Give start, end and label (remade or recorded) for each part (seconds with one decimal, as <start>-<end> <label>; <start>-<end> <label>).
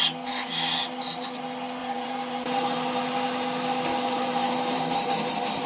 0.0-1.8 recorded; 1.8-3.0 remade; 3.0-3.9 recorded; 3.9-4.8 remade; 4.8-5.7 recorded